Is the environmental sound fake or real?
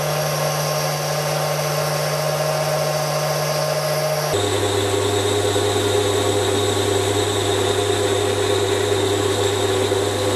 real